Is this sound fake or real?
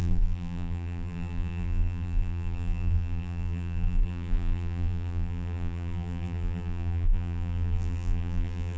fake